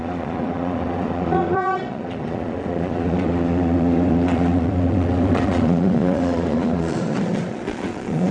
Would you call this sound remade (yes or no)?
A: yes